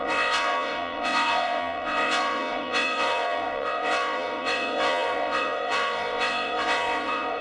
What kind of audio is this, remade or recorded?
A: remade